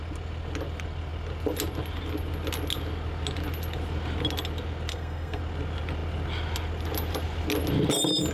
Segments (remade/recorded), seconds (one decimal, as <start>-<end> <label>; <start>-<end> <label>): 0.0-4.9 recorded; 4.9-5.4 remade; 5.4-8.3 recorded